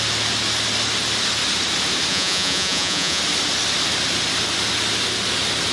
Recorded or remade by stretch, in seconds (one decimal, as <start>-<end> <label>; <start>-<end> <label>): 0.0-2.1 recorded; 2.1-3.2 remade; 3.2-5.7 recorded